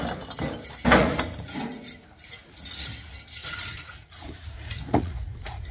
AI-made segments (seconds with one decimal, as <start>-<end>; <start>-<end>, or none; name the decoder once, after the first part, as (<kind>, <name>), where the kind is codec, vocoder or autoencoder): 1.0-1.9 (vocoder, Vocos); 3.4-5.7